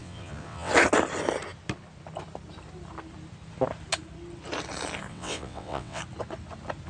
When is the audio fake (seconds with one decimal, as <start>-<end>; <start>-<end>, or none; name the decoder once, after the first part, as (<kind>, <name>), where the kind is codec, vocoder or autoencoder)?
0.0-0.7 (vocoder, WaveNeXt); 5.1-6.0